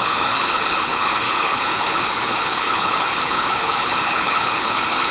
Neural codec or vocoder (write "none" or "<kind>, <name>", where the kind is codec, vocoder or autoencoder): codec, HILCodec